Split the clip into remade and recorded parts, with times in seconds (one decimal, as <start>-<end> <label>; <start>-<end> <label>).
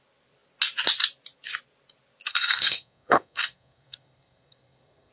0.0-2.3 recorded; 2.3-5.1 remade